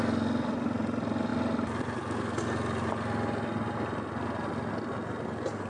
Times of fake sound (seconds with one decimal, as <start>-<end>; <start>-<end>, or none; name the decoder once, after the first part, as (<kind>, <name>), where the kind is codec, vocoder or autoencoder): none